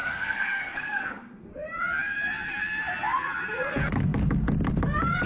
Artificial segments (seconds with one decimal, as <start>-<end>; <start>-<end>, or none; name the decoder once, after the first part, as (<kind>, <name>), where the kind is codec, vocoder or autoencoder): 0.0-1.5 (codec, SNAC)